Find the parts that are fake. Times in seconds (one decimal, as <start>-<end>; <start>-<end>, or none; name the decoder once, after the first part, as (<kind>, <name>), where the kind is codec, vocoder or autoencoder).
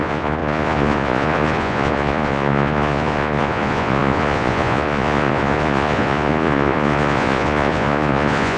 0.0-8.6 (vocoder, Vocos)